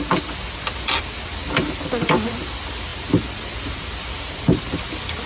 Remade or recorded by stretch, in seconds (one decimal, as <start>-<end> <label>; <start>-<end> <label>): 0.0-5.3 recorded